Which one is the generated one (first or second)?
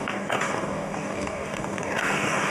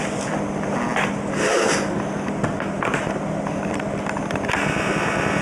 first